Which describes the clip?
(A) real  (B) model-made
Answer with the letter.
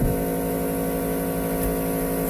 A